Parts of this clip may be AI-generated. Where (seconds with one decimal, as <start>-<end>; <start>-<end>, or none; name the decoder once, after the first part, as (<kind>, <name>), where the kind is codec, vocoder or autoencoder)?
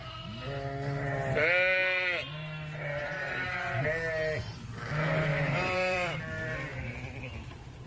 5.3-6.2 (vocoder, BigVGAN v2)